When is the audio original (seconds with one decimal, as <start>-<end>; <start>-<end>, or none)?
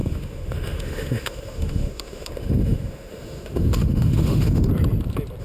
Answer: 4.7-5.4